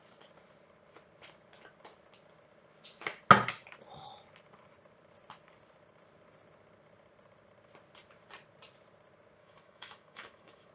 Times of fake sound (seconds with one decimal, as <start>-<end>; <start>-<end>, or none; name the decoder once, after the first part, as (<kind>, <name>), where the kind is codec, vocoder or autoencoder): 9.4-10.7 (autoencoder, DAC-VAE)

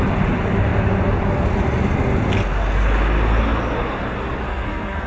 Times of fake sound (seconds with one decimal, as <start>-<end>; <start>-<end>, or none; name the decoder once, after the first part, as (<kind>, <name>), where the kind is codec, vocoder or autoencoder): 4.5-5.1 (codec, SNAC)

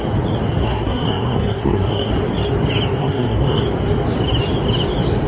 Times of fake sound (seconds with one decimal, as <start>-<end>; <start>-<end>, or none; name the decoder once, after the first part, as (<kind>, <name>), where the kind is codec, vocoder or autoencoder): 0.6-2.1 (codec, SNAC); 3.0-3.6

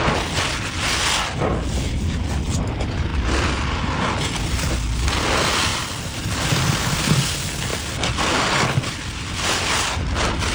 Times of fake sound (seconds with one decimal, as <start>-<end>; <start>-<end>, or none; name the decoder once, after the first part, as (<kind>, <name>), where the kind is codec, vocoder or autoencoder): 5.7-6.3 (vocoder, BigVGAN v2)

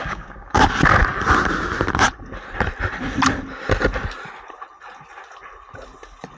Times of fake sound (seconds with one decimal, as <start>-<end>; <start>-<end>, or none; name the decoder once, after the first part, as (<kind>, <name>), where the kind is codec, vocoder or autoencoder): 0.0-0.6 (codec, DAC)

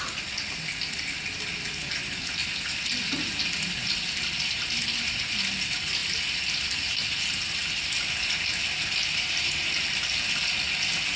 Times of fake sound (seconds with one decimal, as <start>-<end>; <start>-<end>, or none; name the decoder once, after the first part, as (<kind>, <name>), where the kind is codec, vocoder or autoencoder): none

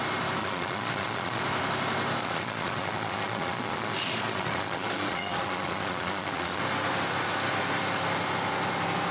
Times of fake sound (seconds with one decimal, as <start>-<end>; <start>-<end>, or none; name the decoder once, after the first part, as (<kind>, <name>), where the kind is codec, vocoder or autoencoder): 0.4-1.4 (vocoder, Vocos); 2.2-6.6

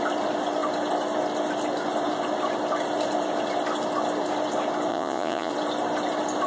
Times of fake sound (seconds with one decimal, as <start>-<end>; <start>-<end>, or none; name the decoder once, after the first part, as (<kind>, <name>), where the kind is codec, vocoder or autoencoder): 4.9-5.5 (vocoder, Vocos)